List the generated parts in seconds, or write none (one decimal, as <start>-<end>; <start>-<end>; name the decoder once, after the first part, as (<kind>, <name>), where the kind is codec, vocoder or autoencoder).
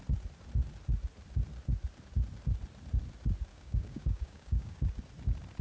3.5-4.8 (codec, DAC)